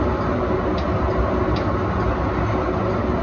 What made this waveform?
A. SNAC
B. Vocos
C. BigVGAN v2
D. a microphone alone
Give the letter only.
D